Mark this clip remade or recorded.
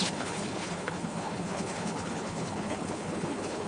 remade